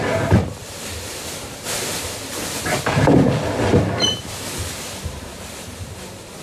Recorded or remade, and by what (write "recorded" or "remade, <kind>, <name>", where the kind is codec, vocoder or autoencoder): remade, vocoder, BigVGAN v2